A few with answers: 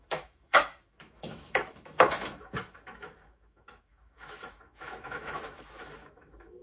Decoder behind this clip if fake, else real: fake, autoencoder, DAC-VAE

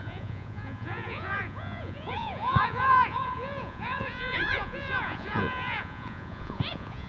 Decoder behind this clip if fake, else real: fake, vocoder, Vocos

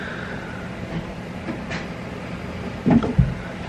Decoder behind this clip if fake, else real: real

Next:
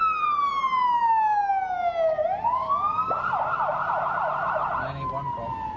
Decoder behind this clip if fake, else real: real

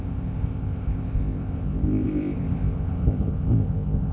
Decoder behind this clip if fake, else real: fake, codec, ZipCodec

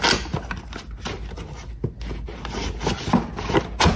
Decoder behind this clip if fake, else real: real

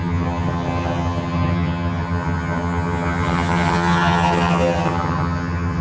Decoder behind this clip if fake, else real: fake, vocoder, HiFi-GAN